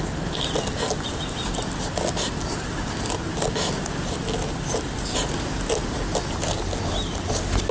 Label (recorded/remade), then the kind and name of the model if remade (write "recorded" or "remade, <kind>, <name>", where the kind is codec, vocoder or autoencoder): recorded